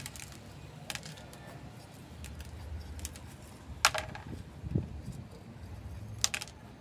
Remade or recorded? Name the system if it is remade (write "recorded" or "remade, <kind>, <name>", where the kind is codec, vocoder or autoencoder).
recorded